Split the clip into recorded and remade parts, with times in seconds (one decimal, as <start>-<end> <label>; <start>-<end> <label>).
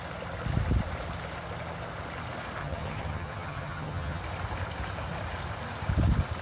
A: 0.0-2.6 recorded; 2.6-4.2 remade; 4.2-6.4 recorded